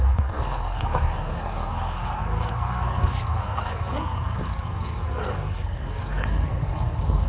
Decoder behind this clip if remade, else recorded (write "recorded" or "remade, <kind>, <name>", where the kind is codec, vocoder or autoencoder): remade, codec, SNAC